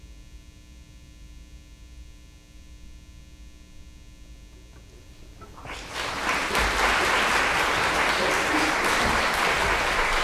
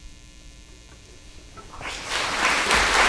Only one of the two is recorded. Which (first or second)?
first